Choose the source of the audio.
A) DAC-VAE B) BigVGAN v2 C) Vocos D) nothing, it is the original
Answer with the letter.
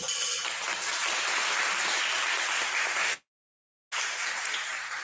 D